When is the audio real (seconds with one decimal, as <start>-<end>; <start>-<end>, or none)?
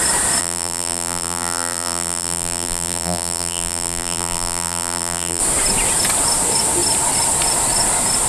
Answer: 0.0-0.4; 5.4-8.3